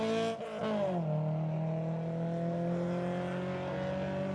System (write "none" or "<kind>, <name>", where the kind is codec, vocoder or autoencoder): none